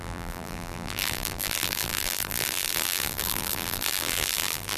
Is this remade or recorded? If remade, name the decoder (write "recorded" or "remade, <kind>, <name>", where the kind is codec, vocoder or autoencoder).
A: remade, vocoder, BigVGAN v2